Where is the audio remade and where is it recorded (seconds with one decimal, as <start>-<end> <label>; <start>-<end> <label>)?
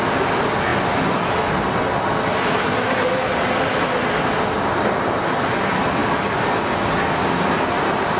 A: 0.0-8.2 recorded